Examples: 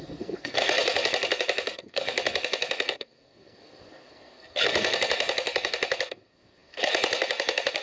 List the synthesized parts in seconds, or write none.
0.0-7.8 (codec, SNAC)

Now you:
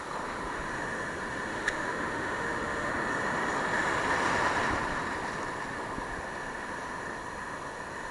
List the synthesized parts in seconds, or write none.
1.5-2.9 (autoencoder, DAC-VAE)

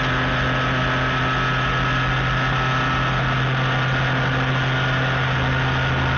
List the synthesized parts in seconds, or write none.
none

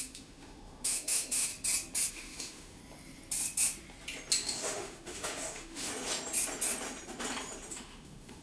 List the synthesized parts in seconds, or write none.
0.0-1.5 (autoencoder, DAC-VAE); 2.1-2.8; 4.5-5.9; 7.7-8.4

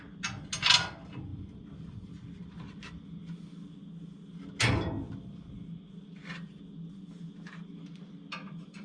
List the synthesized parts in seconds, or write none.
none

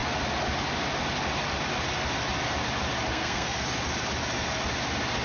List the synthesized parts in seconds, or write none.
3.1-3.6 (codec, SNAC)

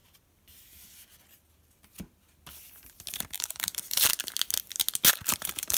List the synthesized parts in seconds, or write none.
3.4-4.1 (vocoder, BigVGAN v2); 5.1-5.8

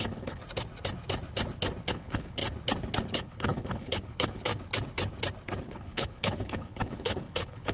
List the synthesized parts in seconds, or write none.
0.0-0.4 (codec, HILCodec); 1.9-2.4; 3.0-4.5; 5.6-7.7